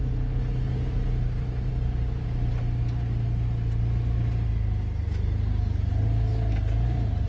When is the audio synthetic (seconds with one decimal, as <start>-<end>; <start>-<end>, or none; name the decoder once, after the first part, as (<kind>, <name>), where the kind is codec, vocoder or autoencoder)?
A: none